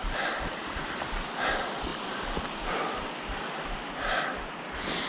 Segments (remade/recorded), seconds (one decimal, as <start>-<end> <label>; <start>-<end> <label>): 0.0-5.1 recorded